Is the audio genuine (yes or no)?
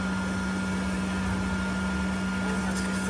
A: yes